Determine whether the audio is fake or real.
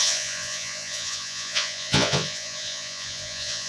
fake